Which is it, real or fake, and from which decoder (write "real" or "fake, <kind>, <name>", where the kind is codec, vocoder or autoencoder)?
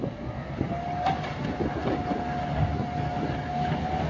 real